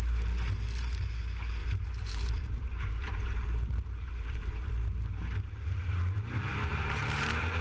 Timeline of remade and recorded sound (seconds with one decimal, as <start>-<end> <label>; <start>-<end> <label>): 0.0-1.6 recorded; 1.6-4.7 remade; 4.7-6.5 recorded; 6.5-7.6 remade